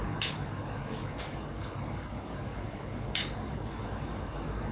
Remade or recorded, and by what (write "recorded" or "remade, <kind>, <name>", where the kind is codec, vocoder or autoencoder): remade, codec, DAC